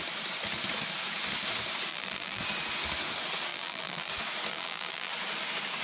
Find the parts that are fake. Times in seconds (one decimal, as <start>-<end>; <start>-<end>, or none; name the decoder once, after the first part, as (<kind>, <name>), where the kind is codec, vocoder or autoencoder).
1.9-2.4 (vocoder, BigVGAN v2); 3.5-4.1; 4.5-5.1